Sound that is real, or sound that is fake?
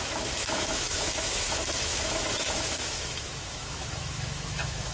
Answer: fake